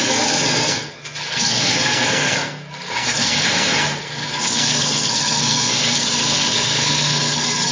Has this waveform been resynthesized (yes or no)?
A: yes